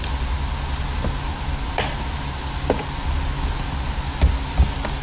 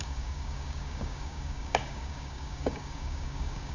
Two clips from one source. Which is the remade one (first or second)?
second